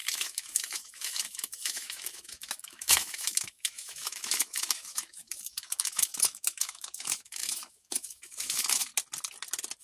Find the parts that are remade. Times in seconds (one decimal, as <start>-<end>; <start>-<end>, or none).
0.0-8.9